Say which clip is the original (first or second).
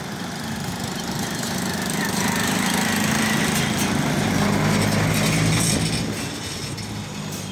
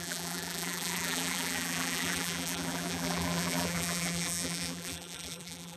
first